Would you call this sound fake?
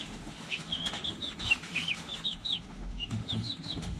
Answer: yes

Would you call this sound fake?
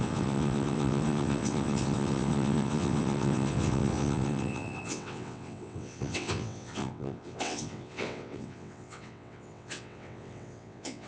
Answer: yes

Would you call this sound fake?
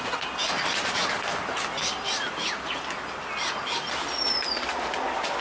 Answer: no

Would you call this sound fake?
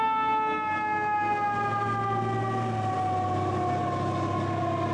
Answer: no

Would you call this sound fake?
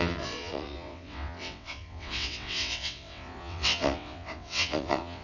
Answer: yes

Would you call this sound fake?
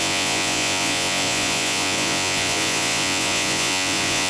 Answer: yes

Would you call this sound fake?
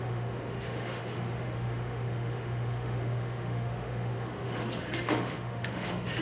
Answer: yes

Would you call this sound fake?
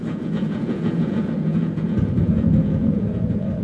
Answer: yes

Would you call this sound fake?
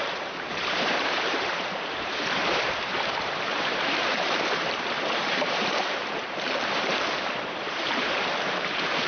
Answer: yes